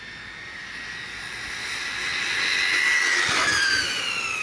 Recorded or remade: recorded